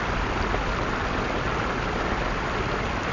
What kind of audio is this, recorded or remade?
recorded